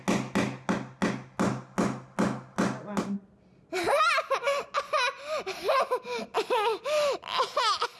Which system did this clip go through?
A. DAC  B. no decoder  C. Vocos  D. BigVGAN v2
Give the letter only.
B